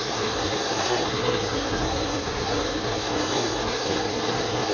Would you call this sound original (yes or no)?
no